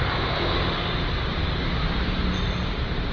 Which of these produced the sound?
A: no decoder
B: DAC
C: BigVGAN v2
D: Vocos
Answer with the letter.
A